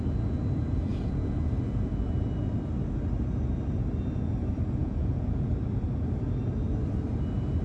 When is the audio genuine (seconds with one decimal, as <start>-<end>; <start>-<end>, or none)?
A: 0.0-4.8; 5.5-7.6